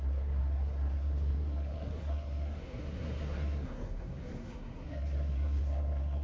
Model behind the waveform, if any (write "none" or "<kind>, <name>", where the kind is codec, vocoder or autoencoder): codec, SNAC